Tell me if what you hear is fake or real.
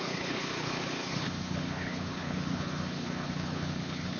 fake